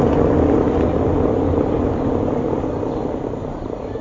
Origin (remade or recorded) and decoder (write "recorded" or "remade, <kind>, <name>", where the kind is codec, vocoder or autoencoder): recorded